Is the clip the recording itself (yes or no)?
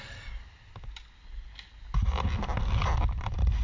yes